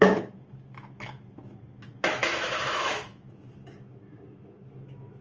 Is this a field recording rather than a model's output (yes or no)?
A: no